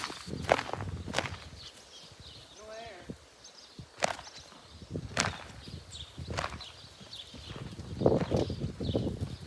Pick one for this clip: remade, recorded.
recorded